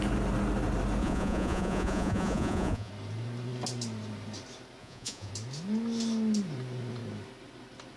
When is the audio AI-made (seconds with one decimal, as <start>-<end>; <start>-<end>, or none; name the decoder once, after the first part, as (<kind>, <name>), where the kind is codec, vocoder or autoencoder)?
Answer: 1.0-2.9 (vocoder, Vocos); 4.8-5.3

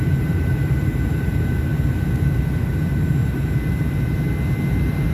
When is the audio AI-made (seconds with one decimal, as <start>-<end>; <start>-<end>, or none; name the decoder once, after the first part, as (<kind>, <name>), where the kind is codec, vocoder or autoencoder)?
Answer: 0.0-1.7 (vocoder, BigVGAN v2)

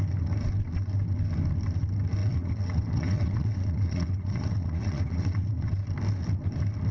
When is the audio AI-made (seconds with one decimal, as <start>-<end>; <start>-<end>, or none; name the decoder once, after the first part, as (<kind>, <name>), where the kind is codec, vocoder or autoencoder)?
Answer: 2.2-5.7 (vocoder, WaveNeXt)

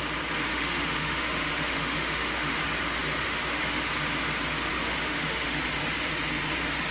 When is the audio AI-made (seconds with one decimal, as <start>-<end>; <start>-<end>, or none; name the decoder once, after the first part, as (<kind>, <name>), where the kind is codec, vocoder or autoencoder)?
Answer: 0.5-2.6 (autoencoder, DAC-VAE); 3.2-3.9; 4.7-5.6